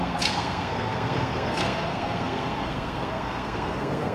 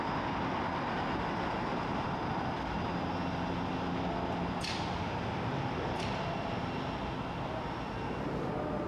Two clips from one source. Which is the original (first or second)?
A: second